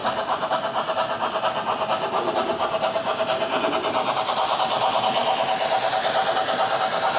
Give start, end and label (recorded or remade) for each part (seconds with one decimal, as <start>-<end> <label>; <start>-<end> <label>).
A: 0.0-7.2 recorded

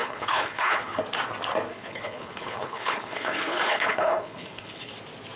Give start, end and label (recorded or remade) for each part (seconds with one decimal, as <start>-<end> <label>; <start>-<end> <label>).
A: 0.0-1.0 remade; 1.0-1.7 recorded; 1.7-4.9 remade; 4.9-5.4 recorded

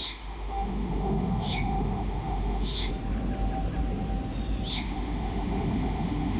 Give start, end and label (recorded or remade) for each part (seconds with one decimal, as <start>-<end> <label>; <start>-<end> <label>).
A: 0.0-2.9 remade; 2.9-4.7 recorded; 4.7-6.4 remade

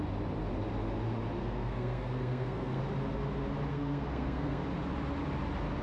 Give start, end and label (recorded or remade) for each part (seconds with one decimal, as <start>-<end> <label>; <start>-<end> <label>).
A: 0.0-1.4 recorded; 1.4-2.8 remade; 2.8-3.7 recorded; 3.7-4.6 remade; 4.6-5.8 recorded

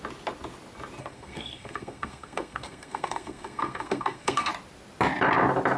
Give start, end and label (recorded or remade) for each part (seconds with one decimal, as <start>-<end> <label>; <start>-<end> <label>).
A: 0.0-1.0 recorded; 1.0-4.5 remade; 4.5-5.8 recorded